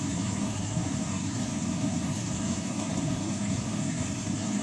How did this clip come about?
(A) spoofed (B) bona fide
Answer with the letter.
A